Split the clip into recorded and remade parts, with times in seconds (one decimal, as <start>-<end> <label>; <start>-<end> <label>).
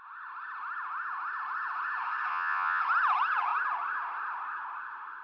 0.0-2.3 recorded; 2.3-2.8 remade; 2.8-5.2 recorded